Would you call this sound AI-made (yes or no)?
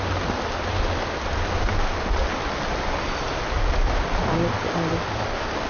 no